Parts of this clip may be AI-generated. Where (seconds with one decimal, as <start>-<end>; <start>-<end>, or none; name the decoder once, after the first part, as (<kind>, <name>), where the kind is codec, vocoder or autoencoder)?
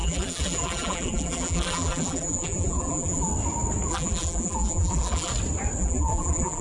0.0-3.3 (vocoder, BigVGAN v2); 3.9-5.3; 5.8-6.6